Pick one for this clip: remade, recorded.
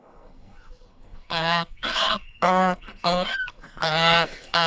remade